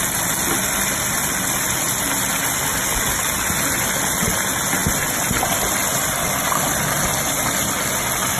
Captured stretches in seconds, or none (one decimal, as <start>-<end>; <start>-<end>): 0.0-8.4